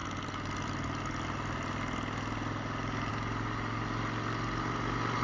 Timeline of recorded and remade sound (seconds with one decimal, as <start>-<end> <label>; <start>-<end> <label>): 0.0-5.2 recorded